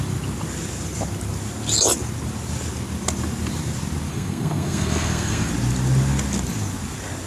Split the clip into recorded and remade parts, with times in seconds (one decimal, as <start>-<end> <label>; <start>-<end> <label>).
0.0-4.1 recorded; 4.1-5.5 remade; 5.5-7.3 recorded